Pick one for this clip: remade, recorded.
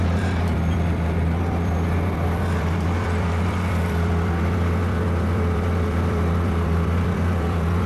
remade